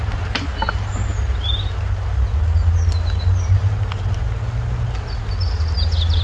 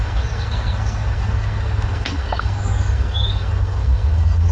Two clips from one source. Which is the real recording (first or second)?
first